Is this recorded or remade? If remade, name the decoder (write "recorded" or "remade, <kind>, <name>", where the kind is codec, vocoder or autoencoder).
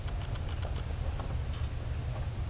remade, vocoder, BigVGAN v2